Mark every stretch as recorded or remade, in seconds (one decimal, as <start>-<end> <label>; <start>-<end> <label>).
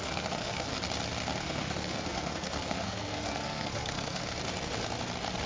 0.0-0.7 remade; 0.7-1.4 recorded; 1.4-4.2 remade; 4.2-5.5 recorded